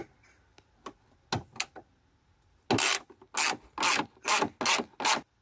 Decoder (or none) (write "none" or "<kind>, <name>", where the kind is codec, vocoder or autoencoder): none